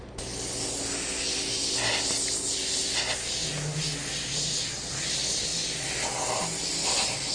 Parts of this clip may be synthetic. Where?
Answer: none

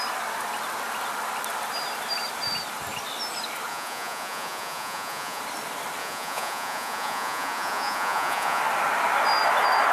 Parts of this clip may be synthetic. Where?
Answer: 3.7-5.4 (vocoder, Vocos); 6.0-8.6

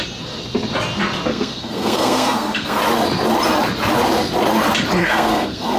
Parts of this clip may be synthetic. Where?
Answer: 1.3-2.8 (codec, SNAC); 5.0-5.8

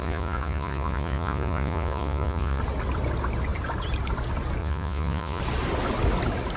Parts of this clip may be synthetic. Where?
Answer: 0.0-2.6 (vocoder, Vocos); 4.6-5.4